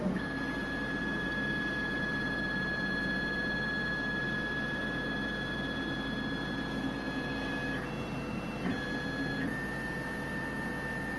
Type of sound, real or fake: real